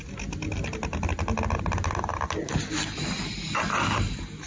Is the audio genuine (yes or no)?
yes